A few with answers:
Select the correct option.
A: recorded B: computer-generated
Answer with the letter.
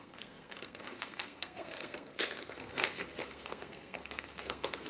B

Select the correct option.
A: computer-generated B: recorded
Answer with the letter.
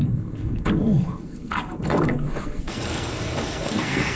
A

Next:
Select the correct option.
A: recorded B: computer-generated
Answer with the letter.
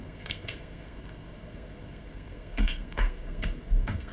B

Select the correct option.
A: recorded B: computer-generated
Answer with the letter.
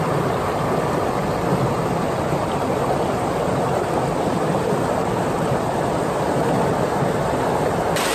A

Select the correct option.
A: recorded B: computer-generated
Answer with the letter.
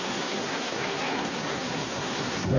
B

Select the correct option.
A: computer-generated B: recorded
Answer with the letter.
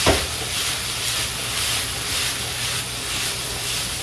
B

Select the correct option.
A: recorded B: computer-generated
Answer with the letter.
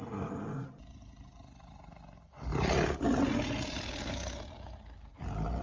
A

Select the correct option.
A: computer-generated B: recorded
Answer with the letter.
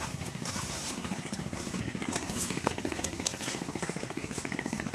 A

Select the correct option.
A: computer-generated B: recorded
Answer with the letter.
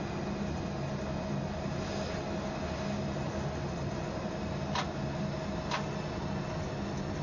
B